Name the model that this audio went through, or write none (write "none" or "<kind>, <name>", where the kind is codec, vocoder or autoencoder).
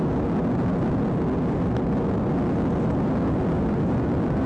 none